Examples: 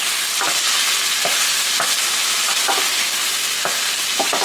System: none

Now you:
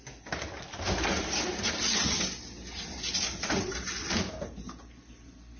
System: none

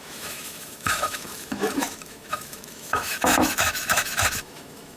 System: autoencoder, DAC-VAE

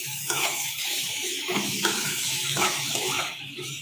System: autoencoder, DAC-VAE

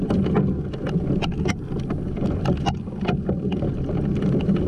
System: none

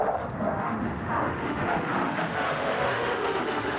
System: autoencoder, DAC-VAE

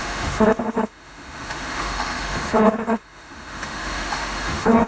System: autoencoder, DAC-VAE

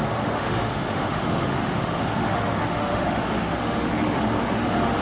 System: autoencoder, DAC-VAE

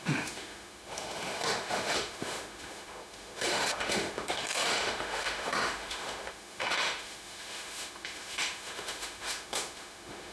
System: autoencoder, DAC-VAE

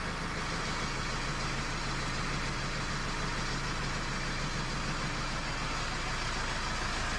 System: none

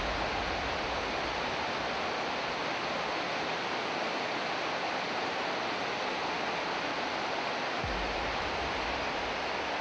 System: none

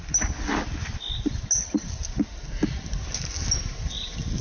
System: none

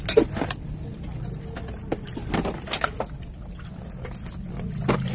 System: none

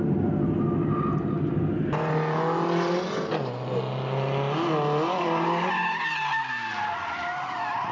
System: none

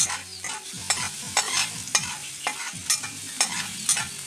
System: none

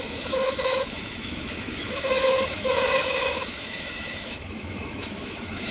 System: autoencoder, DAC-VAE